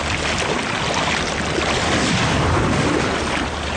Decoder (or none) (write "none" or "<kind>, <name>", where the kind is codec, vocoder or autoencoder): none